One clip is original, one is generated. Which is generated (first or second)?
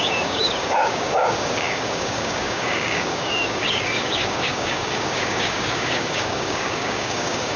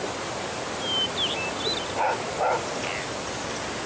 first